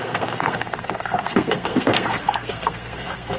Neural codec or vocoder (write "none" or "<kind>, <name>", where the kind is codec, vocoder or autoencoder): codec, SNAC